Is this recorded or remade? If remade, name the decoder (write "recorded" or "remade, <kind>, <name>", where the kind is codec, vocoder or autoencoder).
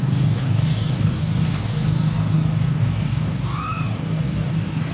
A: remade, codec, DAC